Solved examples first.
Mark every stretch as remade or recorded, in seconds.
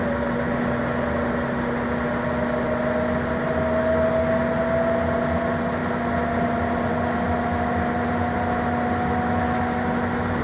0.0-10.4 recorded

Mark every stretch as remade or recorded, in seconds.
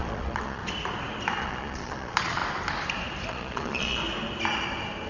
0.0-0.6 remade; 0.6-1.4 recorded; 1.4-2.4 remade; 2.4-3.3 recorded; 3.3-4.0 remade; 4.0-5.1 recorded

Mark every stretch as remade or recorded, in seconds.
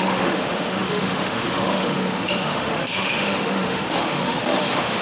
0.0-5.0 remade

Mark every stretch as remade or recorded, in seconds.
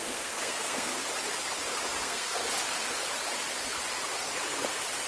0.0-0.9 remade; 0.9-2.0 recorded; 2.0-2.4 remade; 2.4-5.1 recorded